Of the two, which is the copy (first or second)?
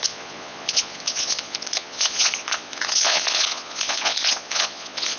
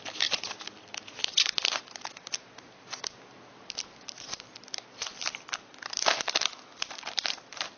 first